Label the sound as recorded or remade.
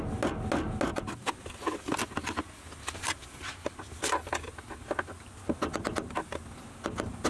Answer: recorded